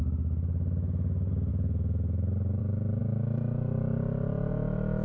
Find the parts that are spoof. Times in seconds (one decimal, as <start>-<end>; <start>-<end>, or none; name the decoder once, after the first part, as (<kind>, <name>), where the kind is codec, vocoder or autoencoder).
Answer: none